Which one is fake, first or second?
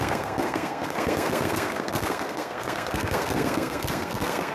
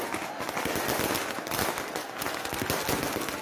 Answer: first